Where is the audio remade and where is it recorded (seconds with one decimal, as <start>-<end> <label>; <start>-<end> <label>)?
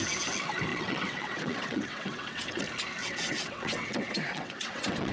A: 0.0-0.7 recorded; 0.7-2.6 remade; 2.6-3.0 recorded; 3.0-5.1 remade